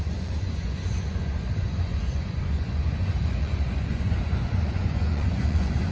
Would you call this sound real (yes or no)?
no